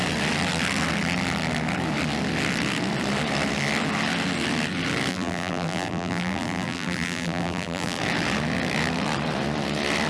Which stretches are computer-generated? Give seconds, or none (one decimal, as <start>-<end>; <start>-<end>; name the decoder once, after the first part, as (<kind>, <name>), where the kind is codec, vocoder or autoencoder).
5.1-8.0 (vocoder, BigVGAN v2)